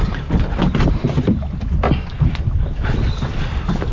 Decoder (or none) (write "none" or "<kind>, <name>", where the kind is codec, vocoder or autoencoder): none